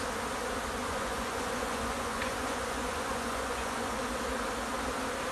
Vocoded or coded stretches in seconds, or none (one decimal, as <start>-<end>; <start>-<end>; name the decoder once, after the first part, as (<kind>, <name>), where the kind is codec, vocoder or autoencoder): 0.8-4.0 (vocoder, Vocos)